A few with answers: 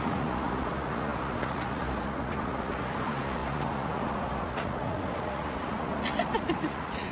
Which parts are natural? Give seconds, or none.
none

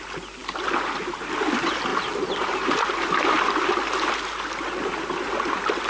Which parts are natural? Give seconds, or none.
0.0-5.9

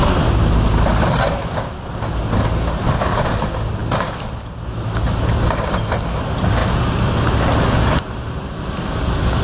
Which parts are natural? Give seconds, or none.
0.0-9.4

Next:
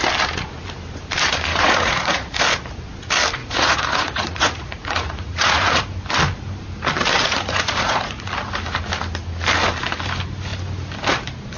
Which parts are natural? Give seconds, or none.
0.0-1.5; 2.4-3.4; 5.8-7.2; 8.3-11.6